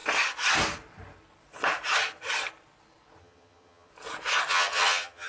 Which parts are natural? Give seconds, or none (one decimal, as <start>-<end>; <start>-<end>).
0.0-3.2; 3.9-4.5